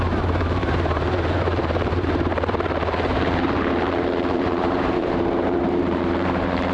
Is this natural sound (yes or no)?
no